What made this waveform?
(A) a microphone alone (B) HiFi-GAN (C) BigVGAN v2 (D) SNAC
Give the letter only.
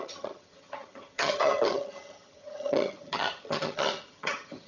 B